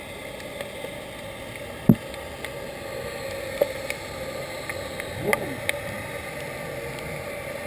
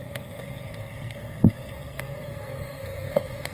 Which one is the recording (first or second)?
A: first